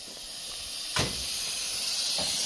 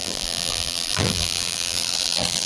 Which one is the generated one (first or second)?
second